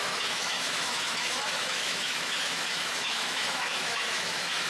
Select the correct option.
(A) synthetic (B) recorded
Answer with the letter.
A